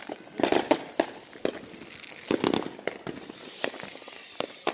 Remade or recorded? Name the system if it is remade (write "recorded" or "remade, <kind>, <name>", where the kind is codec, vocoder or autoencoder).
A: recorded